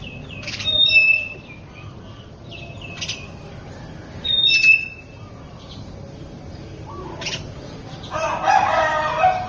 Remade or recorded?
recorded